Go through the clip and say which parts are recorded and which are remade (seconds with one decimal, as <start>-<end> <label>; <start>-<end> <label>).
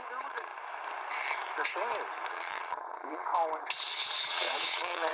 0.0-0.5 remade; 0.5-2.3 recorded; 2.3-3.3 remade; 3.3-3.9 recorded; 3.9-5.1 remade